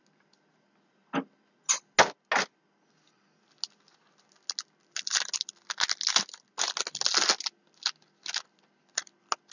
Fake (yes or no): no